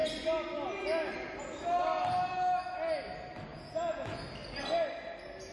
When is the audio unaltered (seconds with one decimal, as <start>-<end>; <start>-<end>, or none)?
0.0-3.5; 4.2-5.5